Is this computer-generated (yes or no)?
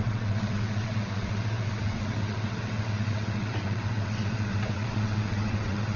yes